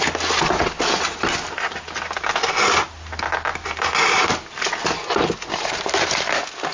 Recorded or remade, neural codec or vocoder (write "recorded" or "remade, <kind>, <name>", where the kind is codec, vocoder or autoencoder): recorded